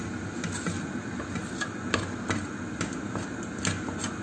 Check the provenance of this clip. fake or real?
real